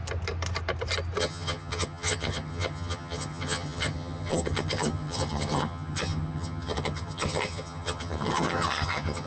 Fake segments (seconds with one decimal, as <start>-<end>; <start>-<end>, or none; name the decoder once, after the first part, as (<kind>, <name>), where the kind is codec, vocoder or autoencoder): 1.2-9.3 (vocoder, HiFi-GAN)